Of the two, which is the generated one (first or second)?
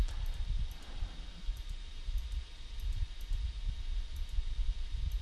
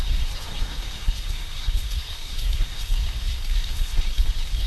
second